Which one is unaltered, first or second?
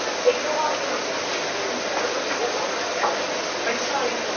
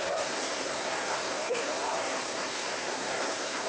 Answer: first